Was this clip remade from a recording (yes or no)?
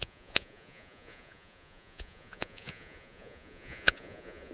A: yes